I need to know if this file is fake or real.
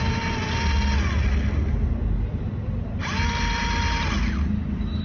real